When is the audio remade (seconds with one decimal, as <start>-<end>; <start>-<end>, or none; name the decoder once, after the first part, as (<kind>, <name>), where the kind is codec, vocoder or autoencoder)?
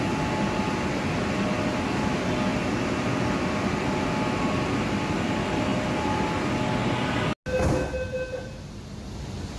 none